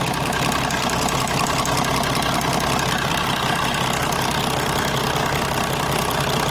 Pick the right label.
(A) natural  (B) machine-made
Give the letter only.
A